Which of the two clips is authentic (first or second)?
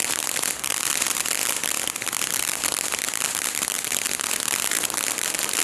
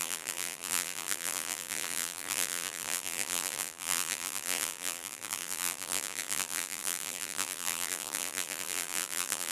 first